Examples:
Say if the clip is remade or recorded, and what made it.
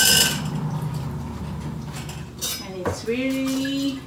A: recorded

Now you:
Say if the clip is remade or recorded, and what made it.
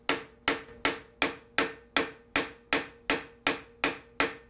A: recorded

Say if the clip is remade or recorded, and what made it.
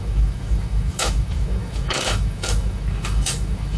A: remade, autoencoder, DAC-VAE